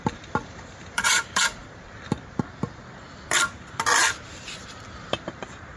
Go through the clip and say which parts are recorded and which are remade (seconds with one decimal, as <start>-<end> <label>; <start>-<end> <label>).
0.0-1.6 remade; 1.6-5.1 recorded; 5.1-5.8 remade